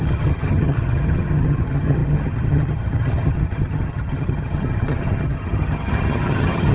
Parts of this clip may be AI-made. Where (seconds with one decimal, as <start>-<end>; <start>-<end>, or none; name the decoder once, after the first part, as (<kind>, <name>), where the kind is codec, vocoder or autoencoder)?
0.0-6.7 (vocoder, HiFi-GAN)

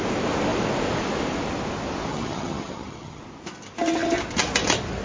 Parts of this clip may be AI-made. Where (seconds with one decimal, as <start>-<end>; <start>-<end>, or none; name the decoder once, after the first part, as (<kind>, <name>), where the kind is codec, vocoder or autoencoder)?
2.1-3.2 (vocoder, HiFi-GAN)

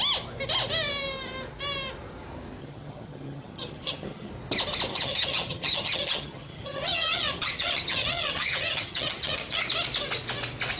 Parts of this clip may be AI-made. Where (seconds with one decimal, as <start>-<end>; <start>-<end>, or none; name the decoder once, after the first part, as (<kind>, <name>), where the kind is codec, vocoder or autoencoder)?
2.6-4.3 (vocoder, HiFi-GAN); 4.9-9.6

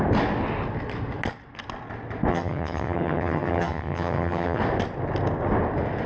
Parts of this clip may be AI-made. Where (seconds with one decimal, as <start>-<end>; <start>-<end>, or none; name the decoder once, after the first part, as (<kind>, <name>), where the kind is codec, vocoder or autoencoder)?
2.3-4.6 (vocoder, HiFi-GAN)

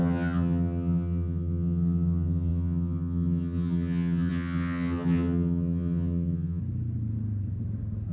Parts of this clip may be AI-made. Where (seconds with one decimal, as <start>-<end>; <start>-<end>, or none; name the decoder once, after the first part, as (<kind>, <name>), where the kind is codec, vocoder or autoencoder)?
0.0-6.6 (vocoder, HiFi-GAN)

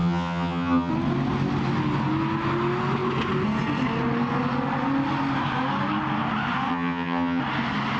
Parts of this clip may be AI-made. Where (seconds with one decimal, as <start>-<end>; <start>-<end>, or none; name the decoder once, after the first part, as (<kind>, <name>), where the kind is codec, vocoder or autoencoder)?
0.0-0.9 (vocoder, HiFi-GAN); 6.7-7.4

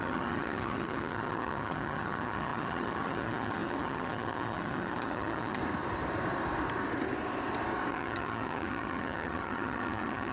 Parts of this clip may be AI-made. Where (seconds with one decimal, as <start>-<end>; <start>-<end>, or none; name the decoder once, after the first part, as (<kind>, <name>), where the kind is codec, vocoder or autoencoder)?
0.0-5.6 (vocoder, HiFi-GAN); 7.9-10.3